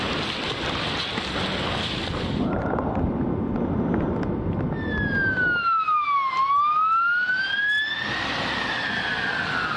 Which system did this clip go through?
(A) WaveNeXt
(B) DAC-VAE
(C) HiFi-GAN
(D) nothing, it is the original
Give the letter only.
D